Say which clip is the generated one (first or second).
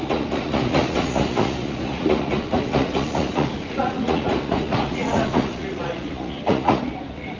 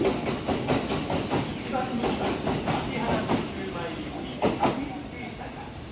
first